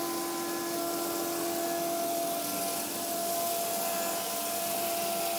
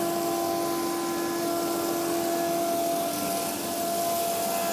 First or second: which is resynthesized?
first